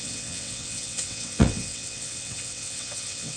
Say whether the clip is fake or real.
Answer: fake